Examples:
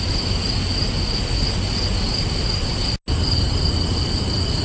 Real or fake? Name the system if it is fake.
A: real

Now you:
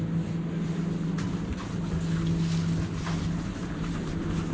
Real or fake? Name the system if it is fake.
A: real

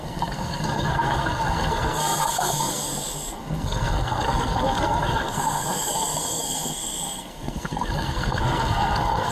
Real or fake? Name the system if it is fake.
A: fake, codec, SNAC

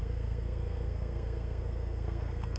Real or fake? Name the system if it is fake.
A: fake, codec, SNAC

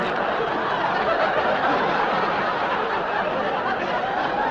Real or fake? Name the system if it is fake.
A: real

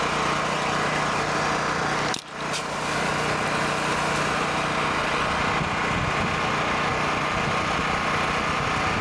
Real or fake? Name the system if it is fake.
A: real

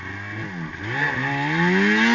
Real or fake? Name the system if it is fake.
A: real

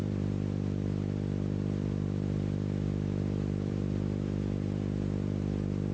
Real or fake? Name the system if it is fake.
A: fake, vocoder, BigVGAN v2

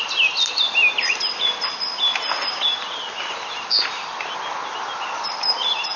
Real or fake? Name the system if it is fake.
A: real